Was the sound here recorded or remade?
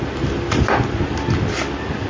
recorded